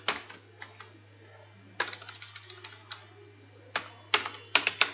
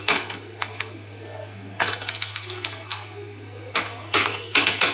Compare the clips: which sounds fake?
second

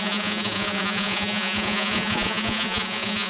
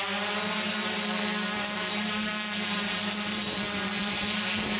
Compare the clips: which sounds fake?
first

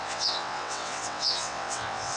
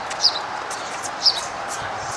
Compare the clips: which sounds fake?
first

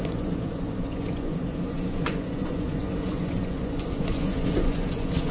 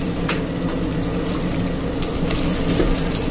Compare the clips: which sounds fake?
first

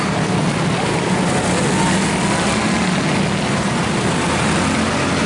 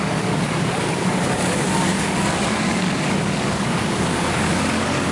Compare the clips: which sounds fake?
second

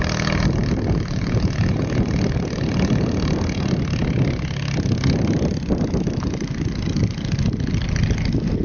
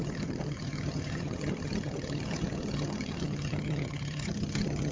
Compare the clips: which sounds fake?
second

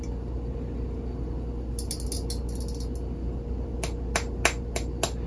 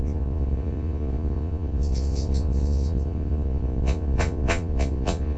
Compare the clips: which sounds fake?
second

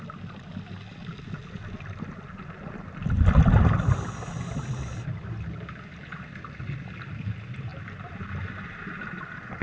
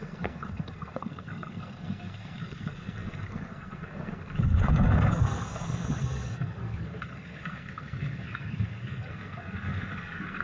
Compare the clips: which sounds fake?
second